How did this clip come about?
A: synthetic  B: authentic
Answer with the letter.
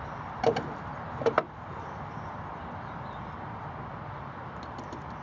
B